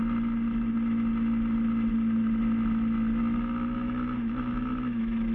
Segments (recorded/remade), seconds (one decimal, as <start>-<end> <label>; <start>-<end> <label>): 0.0-3.2 recorded; 3.2-5.3 remade